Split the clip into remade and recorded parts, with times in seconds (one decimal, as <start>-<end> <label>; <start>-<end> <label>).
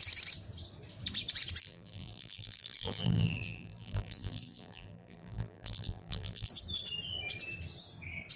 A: 0.0-1.6 recorded; 1.6-6.5 remade; 6.5-8.4 recorded